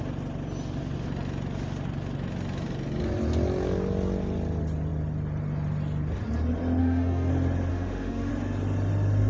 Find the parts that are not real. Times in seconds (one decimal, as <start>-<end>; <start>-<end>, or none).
6.8-7.3; 7.7-8.3